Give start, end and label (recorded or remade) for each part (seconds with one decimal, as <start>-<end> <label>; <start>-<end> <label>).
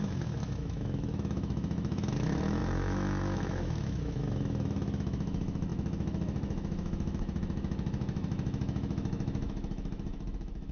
0.0-10.7 remade